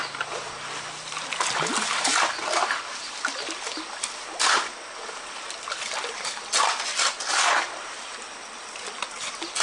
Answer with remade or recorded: recorded